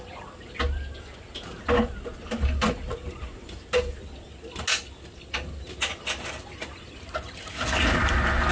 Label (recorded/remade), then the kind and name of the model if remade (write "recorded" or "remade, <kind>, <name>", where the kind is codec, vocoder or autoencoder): recorded